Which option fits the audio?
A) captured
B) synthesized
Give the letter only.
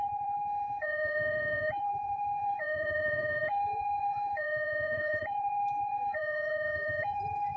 B